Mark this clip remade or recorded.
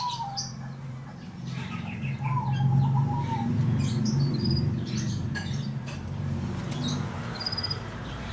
remade